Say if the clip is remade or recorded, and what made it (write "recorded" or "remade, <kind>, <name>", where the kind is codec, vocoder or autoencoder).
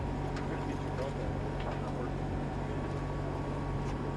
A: recorded